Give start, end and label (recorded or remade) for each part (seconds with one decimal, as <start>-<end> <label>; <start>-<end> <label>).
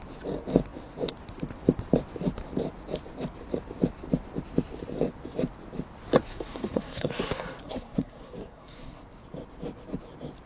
0.0-6.3 recorded; 6.3-9.0 remade; 9.0-10.5 recorded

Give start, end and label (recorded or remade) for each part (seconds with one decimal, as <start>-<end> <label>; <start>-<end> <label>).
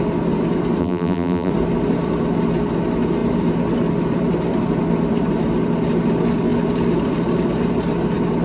0.0-0.8 recorded; 0.8-1.5 remade; 1.5-8.4 recorded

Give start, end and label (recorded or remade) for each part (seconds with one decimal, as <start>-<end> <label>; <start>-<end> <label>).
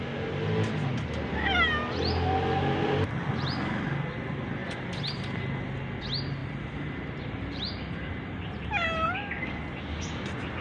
0.0-6.4 recorded; 6.4-8.7 remade; 8.7-10.6 recorded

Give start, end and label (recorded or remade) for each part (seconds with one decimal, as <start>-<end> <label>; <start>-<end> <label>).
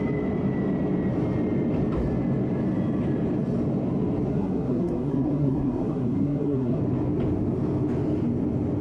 0.0-4.3 recorded; 4.3-6.8 remade; 6.8-8.8 recorded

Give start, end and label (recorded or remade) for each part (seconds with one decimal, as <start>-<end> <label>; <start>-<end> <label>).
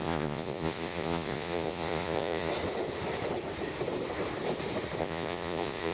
0.0-2.5 remade; 2.5-5.0 recorded; 5.0-5.9 remade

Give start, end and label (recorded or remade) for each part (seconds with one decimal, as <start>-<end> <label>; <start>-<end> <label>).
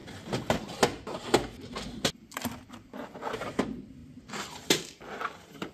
0.0-5.7 recorded